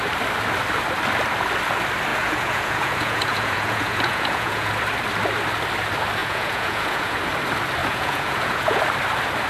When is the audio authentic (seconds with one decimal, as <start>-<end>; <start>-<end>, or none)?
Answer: 0.0-2.1; 4.7-6.2; 7.2-7.8; 8.8-9.5